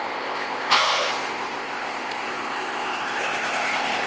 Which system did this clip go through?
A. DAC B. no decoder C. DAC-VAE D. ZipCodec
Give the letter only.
D